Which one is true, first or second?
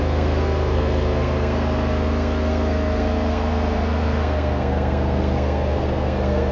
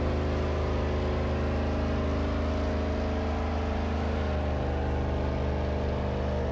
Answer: second